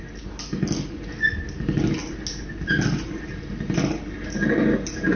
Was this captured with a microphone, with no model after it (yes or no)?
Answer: yes